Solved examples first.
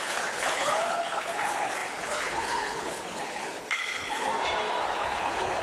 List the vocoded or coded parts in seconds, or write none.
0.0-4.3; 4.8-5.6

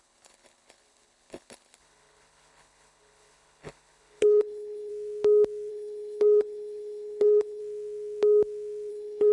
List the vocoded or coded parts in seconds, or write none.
0.0-4.9; 5.7-7.6; 8.9-9.3

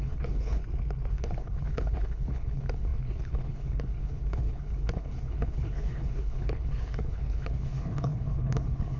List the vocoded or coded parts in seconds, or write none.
0.0-0.6; 1.1-9.0

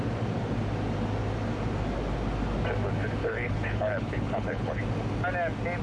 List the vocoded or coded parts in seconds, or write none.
3.2-4.8